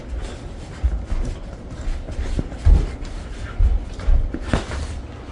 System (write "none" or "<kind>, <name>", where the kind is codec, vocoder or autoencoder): none